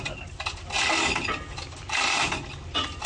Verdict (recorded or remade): recorded